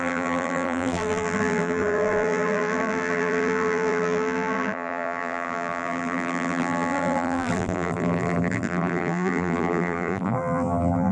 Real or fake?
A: fake